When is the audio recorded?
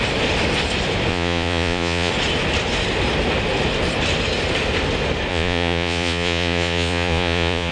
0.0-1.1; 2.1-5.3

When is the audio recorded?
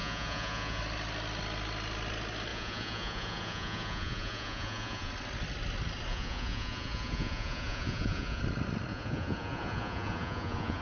0.8-2.5; 5.1-6.1; 8.4-8.9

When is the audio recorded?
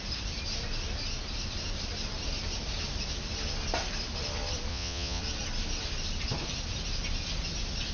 0.0-4.7; 5.2-7.9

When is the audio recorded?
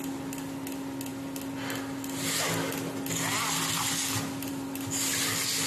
0.0-5.7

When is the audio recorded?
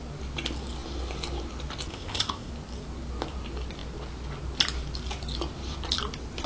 0.0-1.9; 2.5-6.5